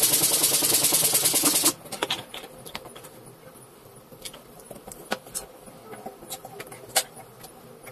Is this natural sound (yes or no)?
yes